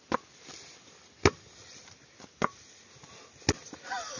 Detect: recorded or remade recorded